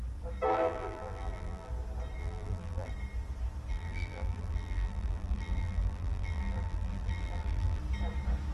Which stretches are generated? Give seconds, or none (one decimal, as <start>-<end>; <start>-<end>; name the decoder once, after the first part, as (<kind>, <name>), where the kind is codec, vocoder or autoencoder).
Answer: 0.5-1.7 (vocoder, BigVGAN v2); 2.2-2.9; 3.7-7.8